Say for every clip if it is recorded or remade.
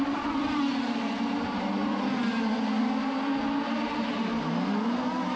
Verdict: recorded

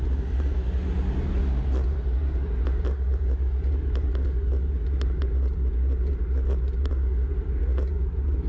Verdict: recorded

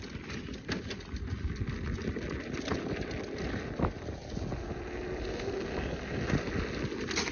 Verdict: recorded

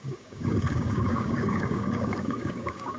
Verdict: remade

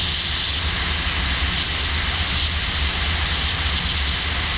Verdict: recorded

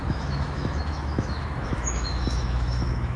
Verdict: remade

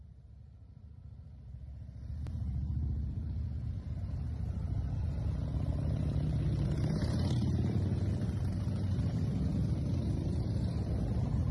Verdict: remade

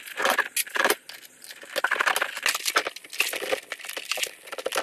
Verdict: recorded